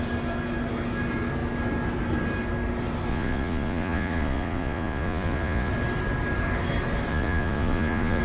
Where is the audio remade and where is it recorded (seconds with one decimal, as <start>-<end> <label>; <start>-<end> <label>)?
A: 0.0-3.1 recorded; 3.1-5.7 remade; 5.7-7.1 recorded; 7.1-8.2 remade